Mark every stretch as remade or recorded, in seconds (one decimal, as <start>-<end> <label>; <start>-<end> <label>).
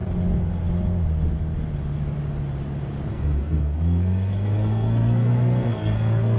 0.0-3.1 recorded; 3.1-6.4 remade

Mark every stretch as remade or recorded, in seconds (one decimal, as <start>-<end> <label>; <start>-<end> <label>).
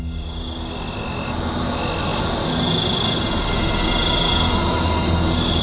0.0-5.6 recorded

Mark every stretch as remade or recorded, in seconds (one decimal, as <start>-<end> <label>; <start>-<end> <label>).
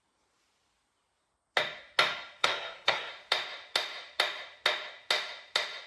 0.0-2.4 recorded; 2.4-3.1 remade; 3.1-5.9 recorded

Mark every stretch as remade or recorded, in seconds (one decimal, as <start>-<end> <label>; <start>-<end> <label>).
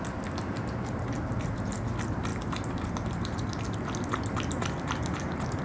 0.0-5.6 recorded